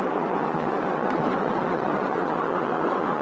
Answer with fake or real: fake